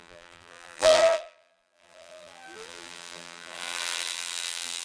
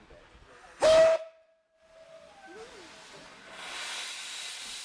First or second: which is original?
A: second